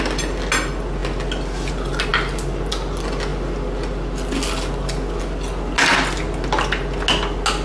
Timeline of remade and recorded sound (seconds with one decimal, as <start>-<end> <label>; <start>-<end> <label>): 0.0-7.6 recorded